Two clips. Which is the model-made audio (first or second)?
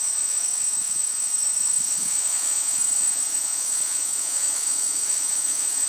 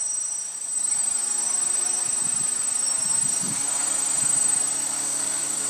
first